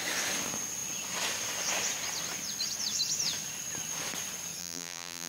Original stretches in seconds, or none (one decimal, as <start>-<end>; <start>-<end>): 0.0-4.6